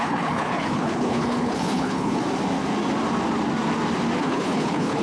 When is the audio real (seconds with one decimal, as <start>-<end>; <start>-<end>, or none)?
2.2-4.2